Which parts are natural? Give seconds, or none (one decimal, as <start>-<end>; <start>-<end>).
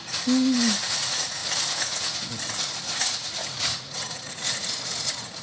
none